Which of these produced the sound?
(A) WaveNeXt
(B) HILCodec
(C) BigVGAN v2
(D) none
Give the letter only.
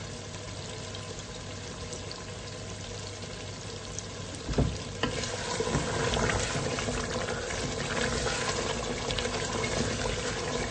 D